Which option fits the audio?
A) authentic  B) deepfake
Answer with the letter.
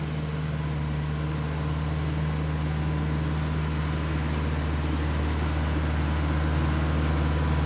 A